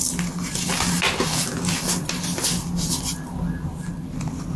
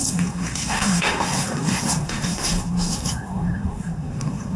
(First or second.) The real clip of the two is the first